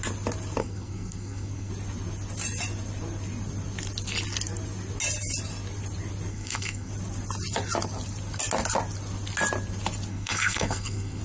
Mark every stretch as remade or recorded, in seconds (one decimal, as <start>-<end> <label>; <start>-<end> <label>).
0.0-0.6 recorded; 0.6-1.7 remade; 1.7-6.3 recorded; 6.3-6.9 remade; 6.9-10.1 recorded; 10.1-11.2 remade